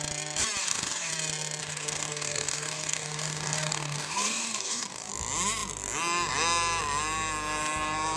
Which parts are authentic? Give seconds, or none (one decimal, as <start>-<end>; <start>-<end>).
0.0-0.6; 1.1-1.6; 5.1-8.2